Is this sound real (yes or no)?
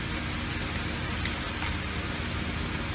yes